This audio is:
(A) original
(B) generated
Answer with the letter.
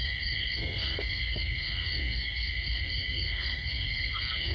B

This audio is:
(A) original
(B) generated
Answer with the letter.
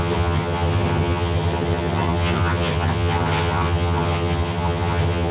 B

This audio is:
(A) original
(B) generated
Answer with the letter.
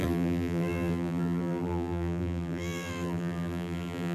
B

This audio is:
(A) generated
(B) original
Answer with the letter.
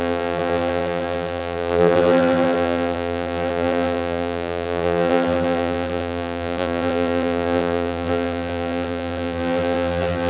A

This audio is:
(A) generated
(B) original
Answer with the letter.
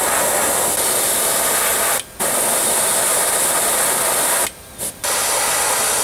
B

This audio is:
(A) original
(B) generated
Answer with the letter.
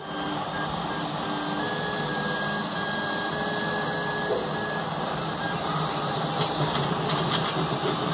A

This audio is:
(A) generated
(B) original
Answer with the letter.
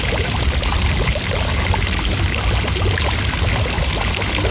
B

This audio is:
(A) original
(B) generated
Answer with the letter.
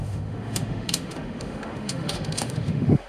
B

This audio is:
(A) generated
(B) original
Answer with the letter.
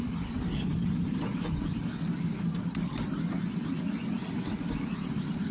B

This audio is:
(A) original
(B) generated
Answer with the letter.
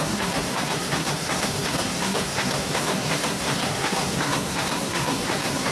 B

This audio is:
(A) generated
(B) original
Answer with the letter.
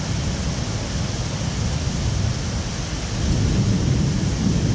B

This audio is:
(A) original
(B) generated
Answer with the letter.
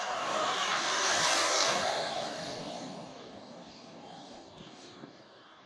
B